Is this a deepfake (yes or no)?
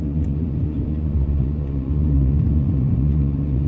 yes